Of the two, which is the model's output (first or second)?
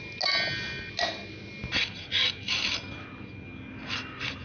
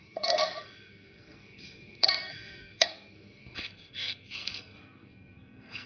second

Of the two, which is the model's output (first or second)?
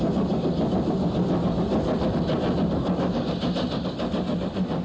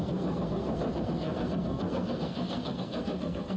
second